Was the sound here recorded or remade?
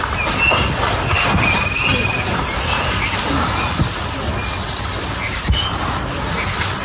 recorded